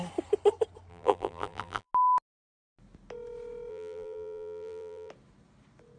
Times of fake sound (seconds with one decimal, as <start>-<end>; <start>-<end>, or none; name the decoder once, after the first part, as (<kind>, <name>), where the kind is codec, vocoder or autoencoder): 0.9-1.9 (vocoder, BigVGAN v2); 3.7-5.1